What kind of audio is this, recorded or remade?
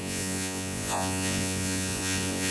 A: remade